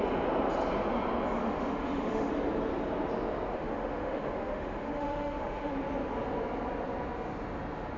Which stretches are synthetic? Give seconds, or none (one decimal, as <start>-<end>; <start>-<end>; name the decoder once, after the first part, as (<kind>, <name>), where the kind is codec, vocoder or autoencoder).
1.4-2.3 (autoencoder, DAC-VAE); 3.5-5.7

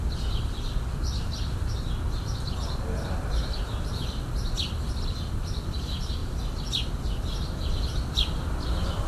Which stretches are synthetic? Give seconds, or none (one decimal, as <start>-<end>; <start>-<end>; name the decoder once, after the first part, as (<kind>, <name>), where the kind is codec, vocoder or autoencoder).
0.0-4.3 (vocoder, BigVGAN v2); 5.6-6.2; 7.2-9.1